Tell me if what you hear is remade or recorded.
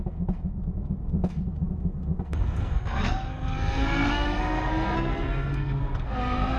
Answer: remade